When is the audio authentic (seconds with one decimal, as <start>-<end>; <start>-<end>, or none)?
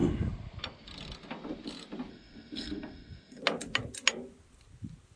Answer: 0.0-2.1; 3.4-5.2